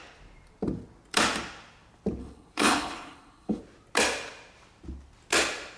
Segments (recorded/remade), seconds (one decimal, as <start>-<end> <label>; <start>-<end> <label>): 0.0-2.2 recorded; 2.2-3.6 remade; 3.6-5.8 recorded